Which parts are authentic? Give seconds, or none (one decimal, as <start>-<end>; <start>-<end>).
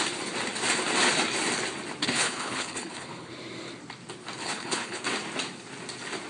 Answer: 0.0-2.0; 3.3-4.4; 5.0-6.3